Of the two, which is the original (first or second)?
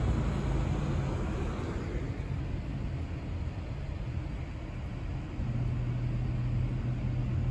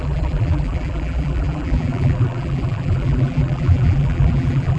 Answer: first